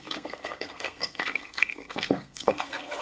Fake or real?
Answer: fake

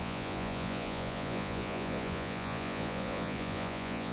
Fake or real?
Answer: fake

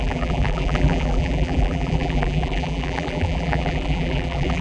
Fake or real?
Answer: fake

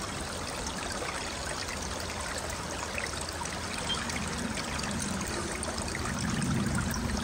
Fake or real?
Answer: real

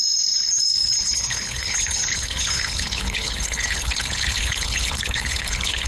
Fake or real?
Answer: fake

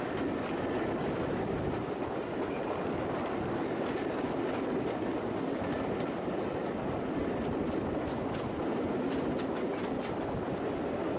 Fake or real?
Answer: real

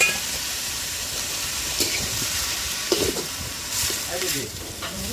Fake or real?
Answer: fake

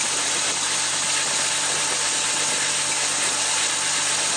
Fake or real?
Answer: real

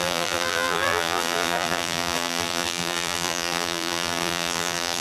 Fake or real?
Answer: fake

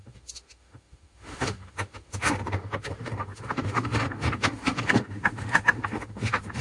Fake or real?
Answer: fake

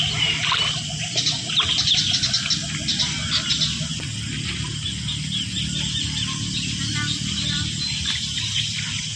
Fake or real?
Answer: real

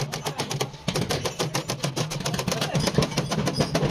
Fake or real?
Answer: real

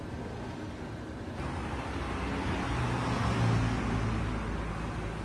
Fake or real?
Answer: real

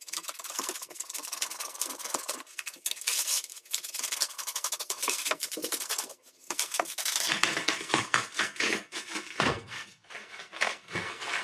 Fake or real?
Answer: fake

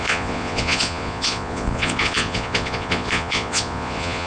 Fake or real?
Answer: fake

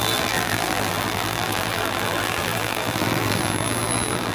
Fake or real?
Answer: fake